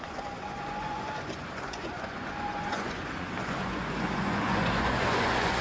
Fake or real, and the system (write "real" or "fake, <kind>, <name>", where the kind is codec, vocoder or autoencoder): fake, vocoder, Vocos